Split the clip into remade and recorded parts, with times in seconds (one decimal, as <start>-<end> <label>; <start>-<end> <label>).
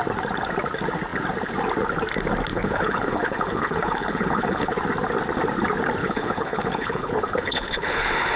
0.0-2.5 recorded; 2.5-4.7 remade; 4.7-6.0 recorded; 6.0-8.4 remade